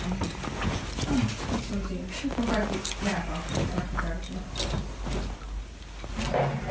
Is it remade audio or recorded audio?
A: recorded